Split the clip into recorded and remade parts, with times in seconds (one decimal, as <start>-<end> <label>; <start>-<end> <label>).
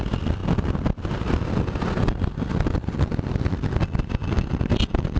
0.0-5.2 recorded